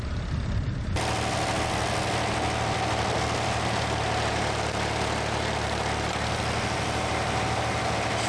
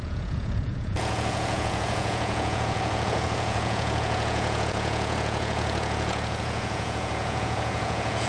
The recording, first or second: first